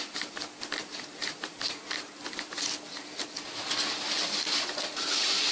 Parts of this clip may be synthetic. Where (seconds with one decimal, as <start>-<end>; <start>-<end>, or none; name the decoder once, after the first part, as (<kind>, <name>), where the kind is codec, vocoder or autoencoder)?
0.8-2.5 (vocoder, BigVGAN v2)